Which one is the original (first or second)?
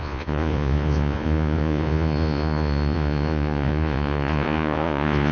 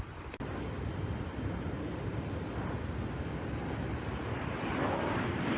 second